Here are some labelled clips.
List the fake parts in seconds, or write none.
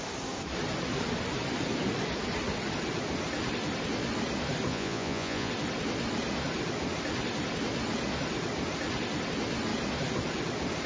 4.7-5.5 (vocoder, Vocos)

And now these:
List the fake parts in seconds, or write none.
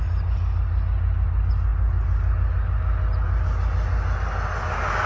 none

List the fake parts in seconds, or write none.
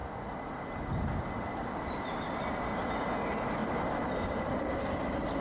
3.6-4.8 (vocoder, BigVGAN v2)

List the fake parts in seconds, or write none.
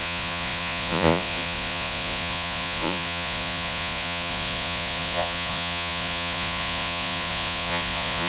0.0-8.3 (vocoder, Vocos)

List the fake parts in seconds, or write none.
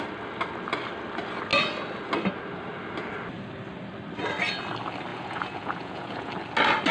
5.1-6.3 (vocoder, Vocos)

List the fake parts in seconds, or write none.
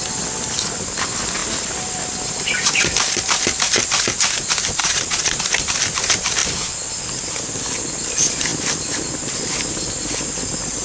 4.8-5.4 (vocoder, Vocos)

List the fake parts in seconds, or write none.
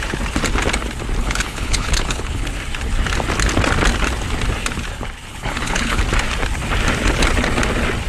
1.2-2.5 (codec, HILCodec); 5.3-6.0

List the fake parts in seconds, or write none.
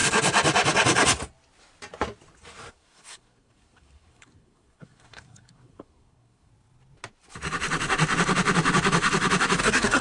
2.7-6.5 (codec, SNAC); 9.6-10.0